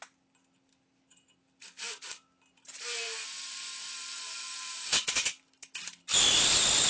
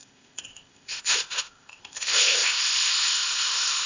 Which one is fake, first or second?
second